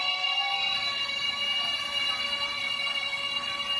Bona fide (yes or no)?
yes